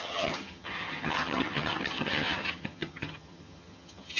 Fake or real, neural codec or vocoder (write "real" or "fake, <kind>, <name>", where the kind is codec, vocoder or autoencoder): fake, vocoder, HiFi-GAN